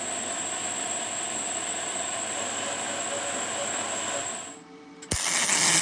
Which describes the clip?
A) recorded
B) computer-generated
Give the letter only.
A